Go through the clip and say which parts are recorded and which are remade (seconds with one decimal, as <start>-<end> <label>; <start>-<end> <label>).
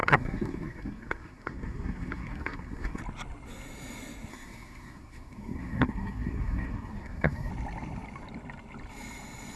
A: 0.0-3.0 remade; 3.0-4.3 recorded; 4.3-7.5 remade; 7.5-9.6 recorded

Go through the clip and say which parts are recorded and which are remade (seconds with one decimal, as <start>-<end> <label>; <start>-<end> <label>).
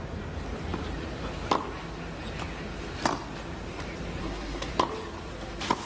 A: 0.0-4.2 recorded; 4.2-4.7 remade; 4.7-5.9 recorded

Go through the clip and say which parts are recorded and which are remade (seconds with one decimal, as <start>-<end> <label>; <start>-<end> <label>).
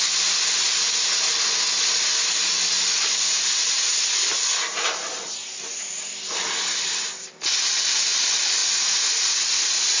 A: 0.0-8.6 recorded; 8.6-10.0 remade